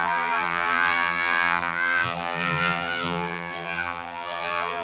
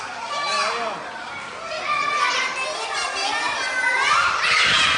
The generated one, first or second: first